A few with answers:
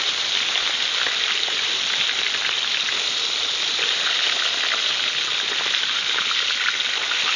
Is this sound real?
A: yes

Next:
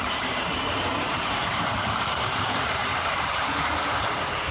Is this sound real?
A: no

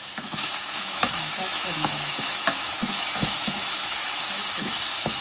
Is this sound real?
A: no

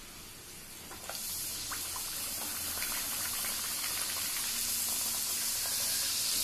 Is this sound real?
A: yes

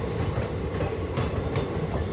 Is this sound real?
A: yes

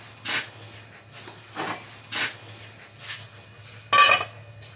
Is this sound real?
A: yes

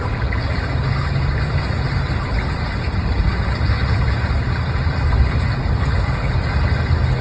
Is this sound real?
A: yes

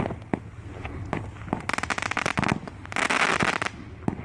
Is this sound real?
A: yes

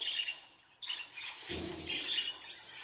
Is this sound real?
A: yes